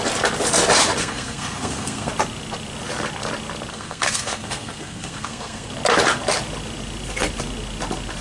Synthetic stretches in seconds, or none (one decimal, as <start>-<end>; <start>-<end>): 1.0-2.1; 3.7-5.7